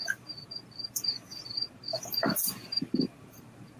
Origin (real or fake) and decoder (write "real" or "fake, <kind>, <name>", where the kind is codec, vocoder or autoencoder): fake, vocoder, BigVGAN v2